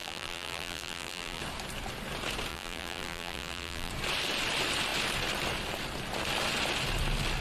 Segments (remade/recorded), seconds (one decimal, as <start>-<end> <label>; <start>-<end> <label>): 0.0-1.4 remade; 1.4-2.5 recorded; 2.5-3.9 remade; 3.9-7.4 recorded

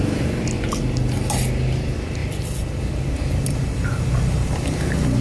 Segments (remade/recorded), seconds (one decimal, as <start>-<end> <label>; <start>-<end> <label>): 0.0-5.2 recorded